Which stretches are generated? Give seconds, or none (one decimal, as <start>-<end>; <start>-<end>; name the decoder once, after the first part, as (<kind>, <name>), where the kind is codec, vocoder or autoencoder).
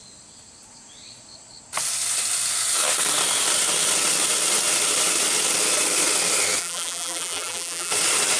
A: 6.6-7.9 (vocoder, BigVGAN v2)